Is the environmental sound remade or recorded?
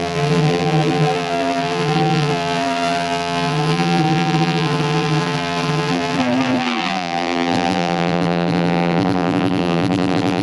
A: remade